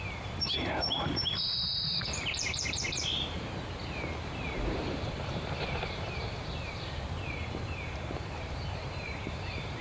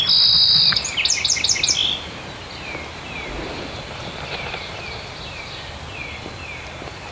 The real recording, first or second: second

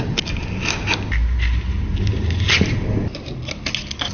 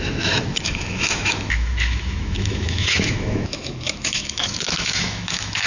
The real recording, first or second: first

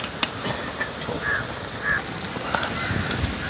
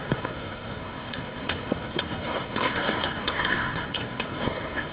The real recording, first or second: first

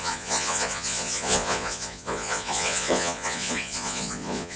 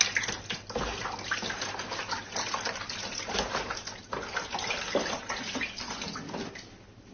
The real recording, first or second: second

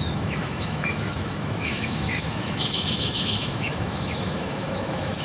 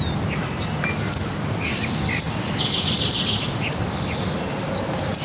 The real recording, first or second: second